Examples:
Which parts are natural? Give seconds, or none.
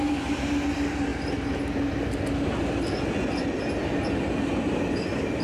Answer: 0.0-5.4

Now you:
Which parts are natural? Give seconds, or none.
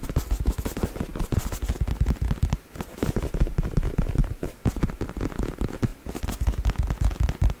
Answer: 0.0-4.2; 4.8-7.6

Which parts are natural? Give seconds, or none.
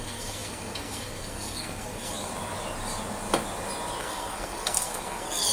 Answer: 2.3-4.0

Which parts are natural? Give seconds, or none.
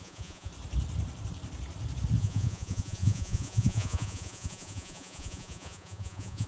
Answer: 0.5-2.2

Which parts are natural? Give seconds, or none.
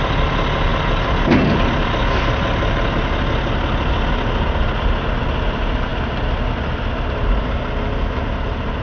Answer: 0.0-8.8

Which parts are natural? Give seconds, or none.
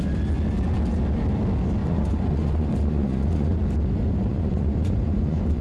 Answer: 0.0-1.8; 3.6-4.3